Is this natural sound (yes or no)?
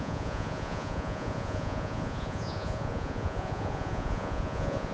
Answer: no